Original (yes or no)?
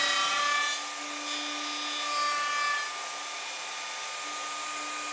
yes